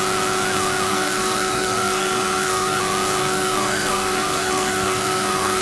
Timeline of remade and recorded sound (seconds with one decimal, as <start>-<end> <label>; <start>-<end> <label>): 0.0-0.9 recorded; 0.9-2.8 remade; 2.8-3.2 recorded; 3.2-5.6 remade